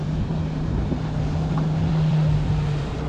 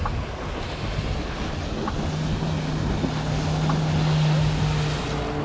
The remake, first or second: first